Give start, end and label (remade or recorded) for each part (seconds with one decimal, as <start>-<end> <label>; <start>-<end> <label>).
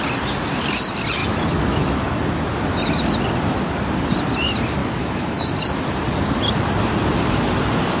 0.0-1.2 recorded; 1.2-2.0 remade; 2.0-4.8 recorded; 4.8-5.5 remade; 5.5-8.0 recorded